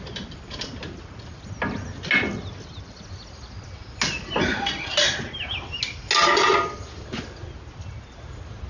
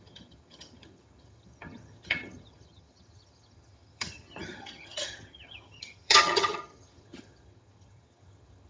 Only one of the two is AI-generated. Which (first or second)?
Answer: second